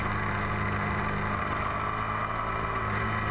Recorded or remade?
recorded